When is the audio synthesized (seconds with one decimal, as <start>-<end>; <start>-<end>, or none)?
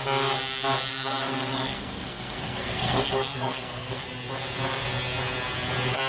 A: 0.9-4.0